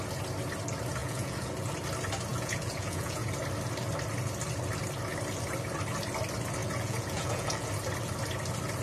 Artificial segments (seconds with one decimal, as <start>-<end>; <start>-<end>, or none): 1.0-1.5; 2.3-3.4; 6.6-7.7